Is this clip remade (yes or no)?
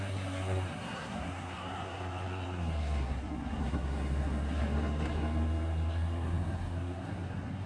yes